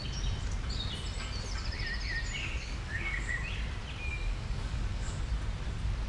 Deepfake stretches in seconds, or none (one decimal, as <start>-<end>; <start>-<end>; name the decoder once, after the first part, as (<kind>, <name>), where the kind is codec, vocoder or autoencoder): 2.4-3.3 (codec, DAC); 4.1-5.2

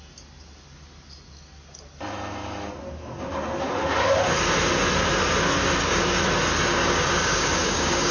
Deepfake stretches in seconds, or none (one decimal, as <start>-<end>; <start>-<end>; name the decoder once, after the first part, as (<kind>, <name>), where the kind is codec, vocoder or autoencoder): 6.8-8.1 (codec, DAC)

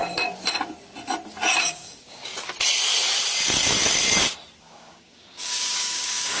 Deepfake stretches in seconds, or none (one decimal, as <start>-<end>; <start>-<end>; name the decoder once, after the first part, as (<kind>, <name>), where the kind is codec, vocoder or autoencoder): 1.6-2.3 (codec, DAC); 4.6-6.4